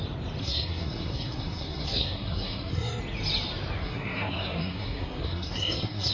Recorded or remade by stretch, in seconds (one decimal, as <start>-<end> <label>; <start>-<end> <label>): 0.0-0.4 recorded; 0.4-3.0 remade; 3.0-3.8 recorded; 3.8-6.1 remade